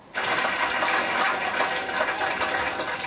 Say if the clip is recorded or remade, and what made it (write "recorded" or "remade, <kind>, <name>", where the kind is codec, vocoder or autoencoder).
recorded